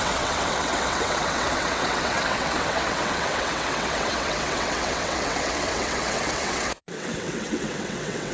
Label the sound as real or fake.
fake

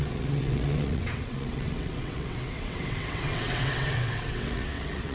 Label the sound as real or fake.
fake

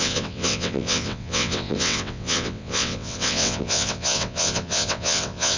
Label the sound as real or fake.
fake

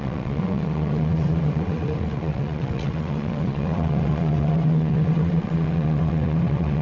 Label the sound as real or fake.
fake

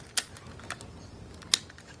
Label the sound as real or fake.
real